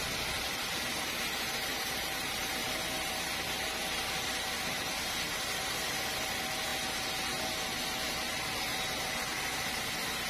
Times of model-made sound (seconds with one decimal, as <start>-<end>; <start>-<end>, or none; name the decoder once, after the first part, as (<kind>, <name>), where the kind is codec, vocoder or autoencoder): 1.7-2.4 (vocoder, BigVGAN v2)